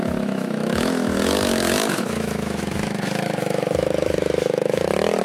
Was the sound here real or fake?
fake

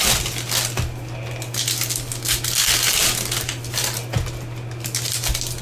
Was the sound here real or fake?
real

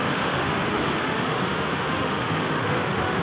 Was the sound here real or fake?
fake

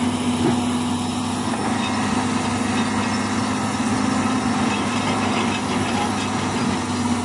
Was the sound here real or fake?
real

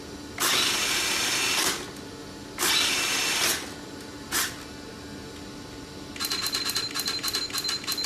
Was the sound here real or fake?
real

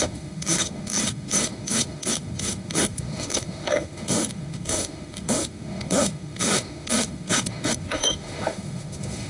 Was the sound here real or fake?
fake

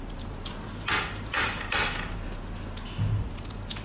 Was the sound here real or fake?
real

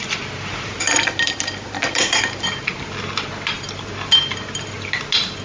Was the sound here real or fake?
real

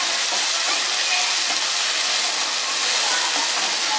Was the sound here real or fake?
real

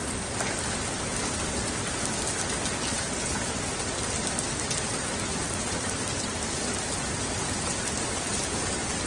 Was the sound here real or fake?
real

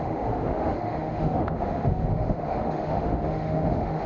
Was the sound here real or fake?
fake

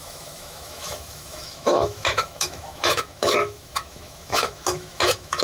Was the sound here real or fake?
fake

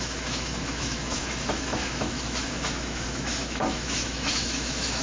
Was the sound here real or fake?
fake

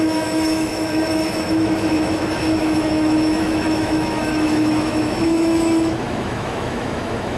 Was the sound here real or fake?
fake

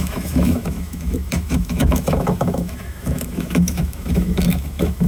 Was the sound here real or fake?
fake